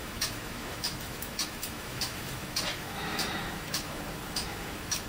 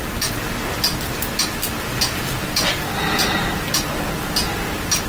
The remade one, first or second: first